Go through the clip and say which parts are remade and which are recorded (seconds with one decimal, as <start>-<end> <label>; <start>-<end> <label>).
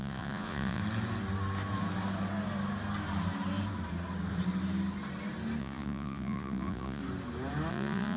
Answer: 0.0-0.8 remade; 0.8-5.6 recorded; 5.6-7.0 remade; 7.0-7.7 recorded; 7.7-8.2 remade